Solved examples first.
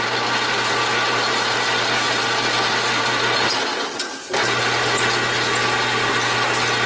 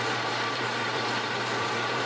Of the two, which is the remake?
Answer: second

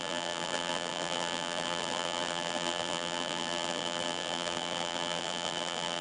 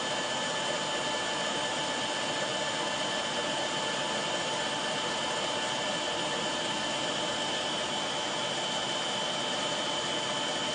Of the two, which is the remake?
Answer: first